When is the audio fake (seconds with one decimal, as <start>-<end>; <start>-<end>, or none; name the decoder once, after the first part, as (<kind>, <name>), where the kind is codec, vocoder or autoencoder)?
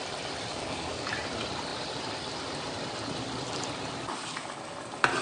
0.5-1.1 (codec, DAC)